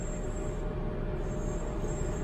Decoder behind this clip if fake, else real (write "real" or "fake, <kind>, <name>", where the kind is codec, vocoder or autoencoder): real